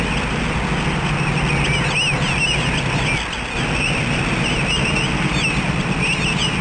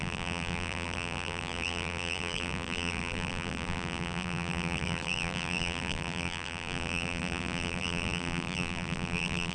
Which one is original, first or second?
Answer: first